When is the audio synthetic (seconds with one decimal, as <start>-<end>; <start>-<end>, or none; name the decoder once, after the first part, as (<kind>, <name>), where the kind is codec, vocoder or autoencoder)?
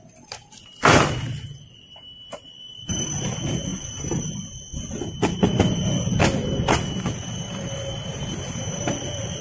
none